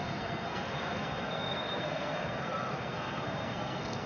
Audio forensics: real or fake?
fake